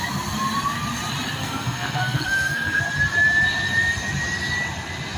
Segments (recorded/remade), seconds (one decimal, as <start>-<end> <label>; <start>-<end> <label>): 0.0-1.4 recorded; 1.4-2.8 remade; 2.8-5.2 recorded